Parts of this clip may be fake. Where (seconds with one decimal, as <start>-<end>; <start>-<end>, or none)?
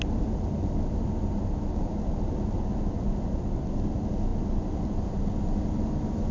none